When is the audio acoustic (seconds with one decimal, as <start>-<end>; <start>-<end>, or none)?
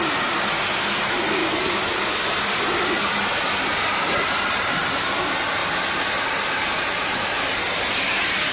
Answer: 0.0-8.5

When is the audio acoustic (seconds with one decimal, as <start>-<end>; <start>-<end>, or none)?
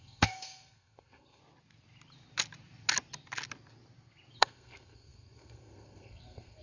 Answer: 1.4-4.4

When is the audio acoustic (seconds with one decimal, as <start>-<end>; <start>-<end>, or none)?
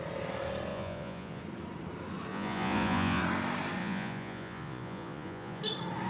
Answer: 0.0-0.7; 1.4-2.3; 3.2-3.8; 5.6-6.1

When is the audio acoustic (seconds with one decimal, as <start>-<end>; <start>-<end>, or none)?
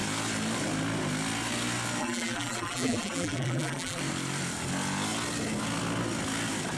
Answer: 0.0-2.0; 4.0-6.8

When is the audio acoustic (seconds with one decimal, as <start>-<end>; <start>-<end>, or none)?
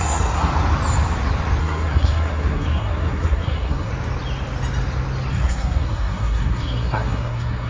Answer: 0.5-1.6; 3.9-5.3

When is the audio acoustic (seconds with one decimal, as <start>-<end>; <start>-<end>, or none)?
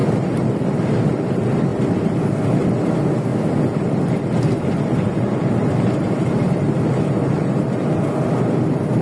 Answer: 0.0-9.0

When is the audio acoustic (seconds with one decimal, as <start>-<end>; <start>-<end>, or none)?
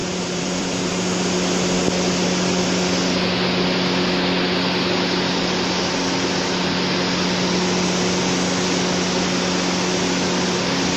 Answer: 0.9-11.0